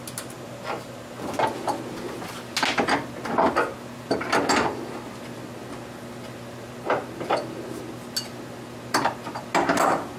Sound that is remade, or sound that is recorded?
recorded